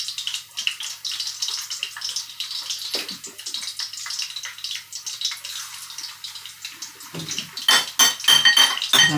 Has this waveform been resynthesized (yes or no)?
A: no